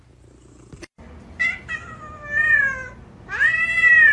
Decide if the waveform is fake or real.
fake